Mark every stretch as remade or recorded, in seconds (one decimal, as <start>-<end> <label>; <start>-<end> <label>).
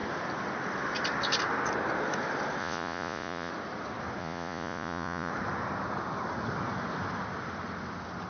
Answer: 0.0-2.6 recorded; 2.6-3.5 remade; 3.5-4.2 recorded; 4.2-5.3 remade; 5.3-8.3 recorded